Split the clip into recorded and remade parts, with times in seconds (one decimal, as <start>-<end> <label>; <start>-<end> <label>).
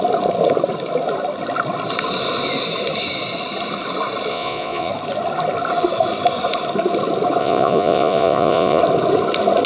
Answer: 0.0-4.3 recorded; 4.3-4.9 remade; 4.9-7.4 recorded; 7.4-8.8 remade; 8.8-9.7 recorded